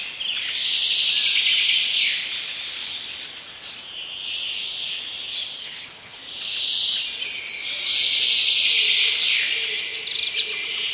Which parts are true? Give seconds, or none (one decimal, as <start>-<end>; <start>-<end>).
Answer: 0.0-5.6; 6.2-10.9